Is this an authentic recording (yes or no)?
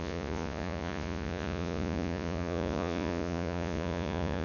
no